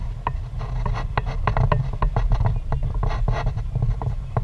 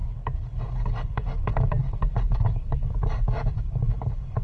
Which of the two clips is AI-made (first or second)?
second